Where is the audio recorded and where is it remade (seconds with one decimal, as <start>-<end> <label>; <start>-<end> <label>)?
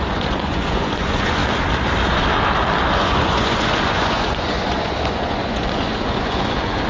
0.0-1.4 remade; 1.4-2.9 recorded; 2.9-6.9 remade